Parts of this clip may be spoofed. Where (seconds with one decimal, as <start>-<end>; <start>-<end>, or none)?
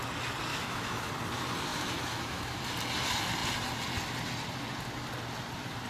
0.5-1.1; 1.7-2.6